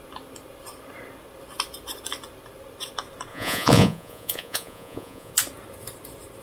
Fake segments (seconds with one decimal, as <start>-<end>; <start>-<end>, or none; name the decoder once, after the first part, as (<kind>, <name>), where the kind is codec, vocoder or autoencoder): 3.3-5.3 (vocoder, Vocos)